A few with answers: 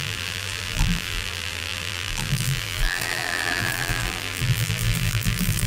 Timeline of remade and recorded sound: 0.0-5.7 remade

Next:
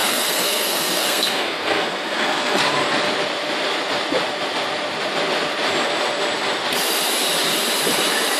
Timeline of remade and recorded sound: 0.0-2.6 remade; 2.6-8.4 recorded

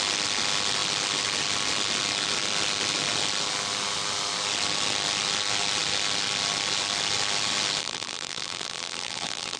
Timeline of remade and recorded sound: 0.0-7.8 recorded; 7.8-9.6 remade